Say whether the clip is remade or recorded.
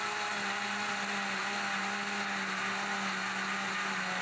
recorded